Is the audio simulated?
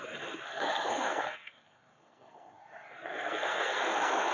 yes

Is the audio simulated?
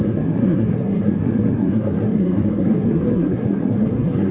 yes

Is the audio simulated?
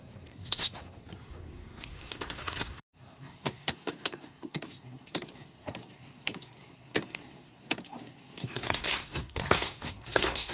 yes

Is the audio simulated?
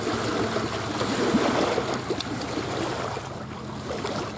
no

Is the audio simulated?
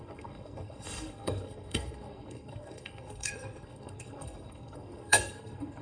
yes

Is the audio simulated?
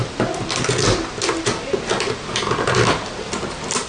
no